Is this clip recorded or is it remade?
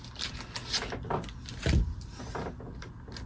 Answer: recorded